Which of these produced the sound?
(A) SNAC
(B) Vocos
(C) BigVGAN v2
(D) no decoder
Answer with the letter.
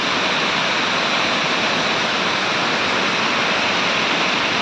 D